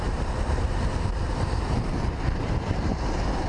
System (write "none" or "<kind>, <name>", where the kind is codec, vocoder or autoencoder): vocoder, BigVGAN v2